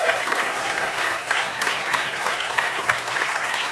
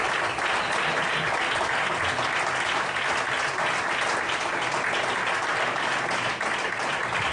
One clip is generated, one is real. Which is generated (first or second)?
first